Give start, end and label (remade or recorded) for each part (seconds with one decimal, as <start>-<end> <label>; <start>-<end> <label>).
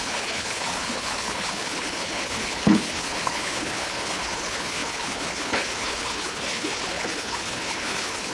0.0-8.3 remade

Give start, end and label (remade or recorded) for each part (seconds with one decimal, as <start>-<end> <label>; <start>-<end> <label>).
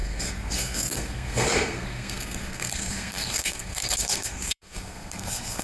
0.0-5.6 remade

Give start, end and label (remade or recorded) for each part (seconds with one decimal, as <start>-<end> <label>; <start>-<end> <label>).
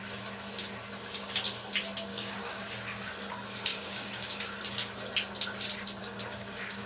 0.0-2.1 recorded; 2.1-2.7 remade; 2.7-3.7 recorded; 3.7-4.6 remade; 4.6-6.0 recorded; 6.0-6.9 remade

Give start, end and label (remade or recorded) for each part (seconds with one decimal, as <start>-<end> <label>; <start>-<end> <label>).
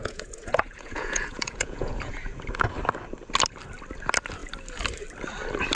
0.0-2.2 remade; 2.2-5.7 recorded